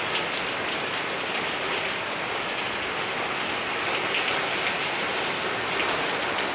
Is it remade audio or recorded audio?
recorded